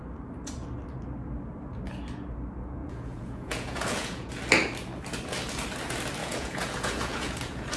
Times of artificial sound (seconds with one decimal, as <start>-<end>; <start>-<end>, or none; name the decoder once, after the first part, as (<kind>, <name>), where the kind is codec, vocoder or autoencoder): 2.8-4.3 (vocoder, Vocos); 6.2-7.8